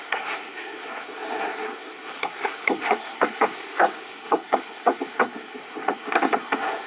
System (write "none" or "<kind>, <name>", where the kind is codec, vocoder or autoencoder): codec, SNAC